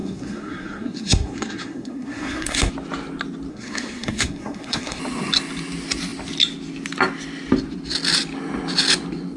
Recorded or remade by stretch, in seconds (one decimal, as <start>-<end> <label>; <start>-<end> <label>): 0.0-2.7 remade; 2.7-3.5 recorded; 3.5-5.0 remade; 5.0-9.4 recorded